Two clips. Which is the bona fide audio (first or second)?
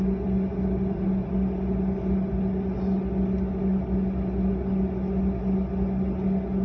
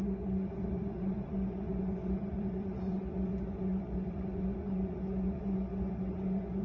first